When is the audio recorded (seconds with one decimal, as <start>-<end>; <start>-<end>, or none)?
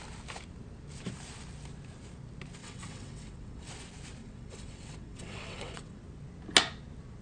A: 0.0-2.6; 3.7-4.2; 6.0-7.2